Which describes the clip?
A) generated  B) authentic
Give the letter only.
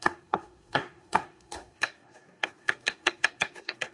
A